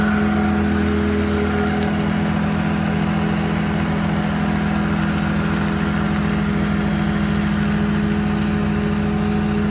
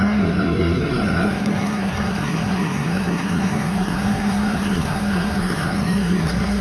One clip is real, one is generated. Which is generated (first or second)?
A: second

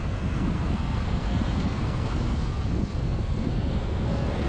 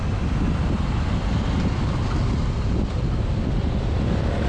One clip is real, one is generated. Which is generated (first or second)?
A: first